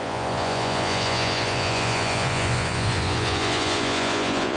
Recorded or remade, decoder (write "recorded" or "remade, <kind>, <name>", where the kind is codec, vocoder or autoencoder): remade, vocoder, Vocos